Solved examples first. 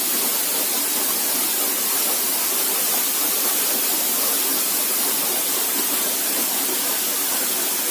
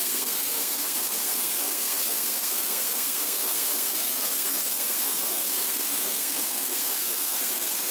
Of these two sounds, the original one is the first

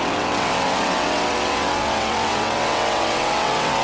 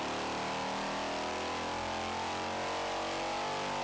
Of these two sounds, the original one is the second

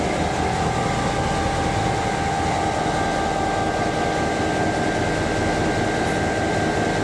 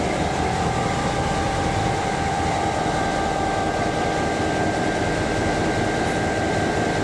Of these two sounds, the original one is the first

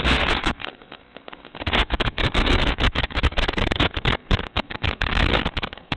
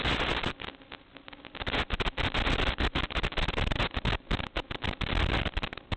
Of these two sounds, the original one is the second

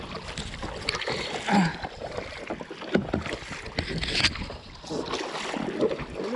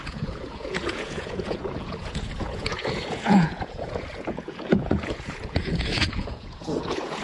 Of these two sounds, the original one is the first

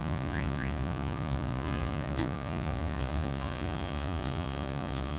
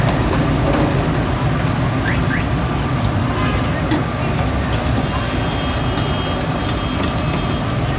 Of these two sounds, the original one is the second